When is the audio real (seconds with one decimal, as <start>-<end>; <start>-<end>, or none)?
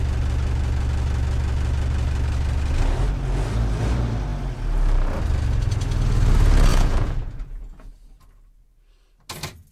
0.0-6.7; 7.9-9.7